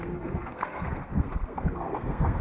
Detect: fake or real fake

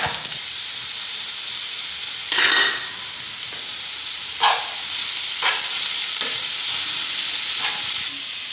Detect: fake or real real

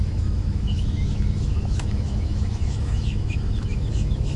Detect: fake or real fake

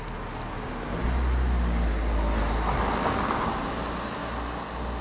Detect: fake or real real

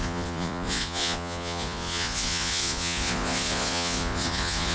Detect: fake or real fake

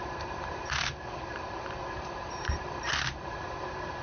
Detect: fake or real fake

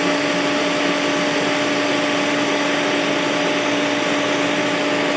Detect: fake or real real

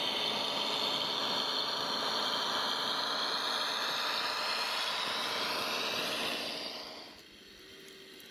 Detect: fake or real real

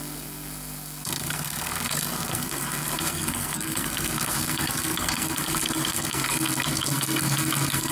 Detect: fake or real fake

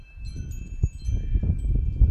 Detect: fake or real real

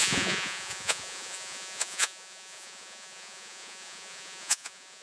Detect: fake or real fake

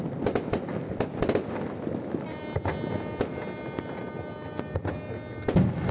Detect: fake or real real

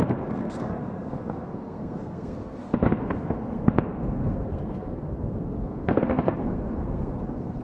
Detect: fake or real fake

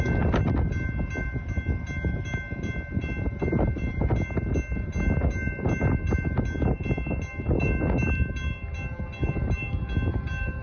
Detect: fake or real real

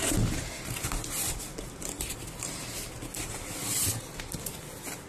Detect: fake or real real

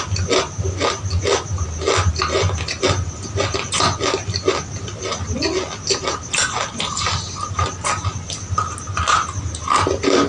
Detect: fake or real real